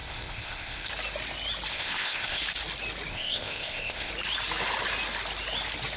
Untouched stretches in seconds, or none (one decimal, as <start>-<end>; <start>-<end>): 0.9-1.7; 2.4-3.1; 4.1-6.0